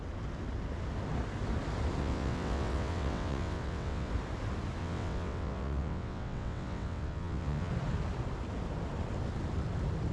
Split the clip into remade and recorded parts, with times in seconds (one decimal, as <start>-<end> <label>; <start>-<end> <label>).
0.0-2.0 recorded; 2.0-4.1 remade; 4.1-4.8 recorded; 4.8-7.7 remade; 7.7-10.1 recorded